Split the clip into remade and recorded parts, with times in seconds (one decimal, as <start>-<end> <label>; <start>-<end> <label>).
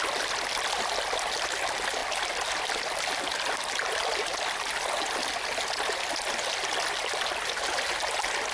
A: 0.0-8.5 recorded